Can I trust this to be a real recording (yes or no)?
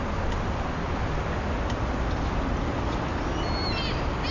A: yes